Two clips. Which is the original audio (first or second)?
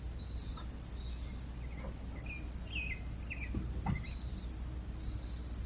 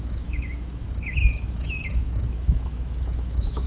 first